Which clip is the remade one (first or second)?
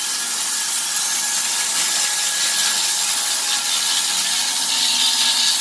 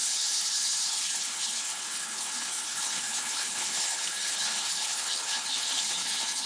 second